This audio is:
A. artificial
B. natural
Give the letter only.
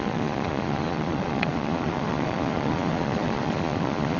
A